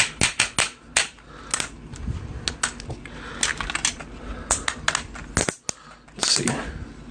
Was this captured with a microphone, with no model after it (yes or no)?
yes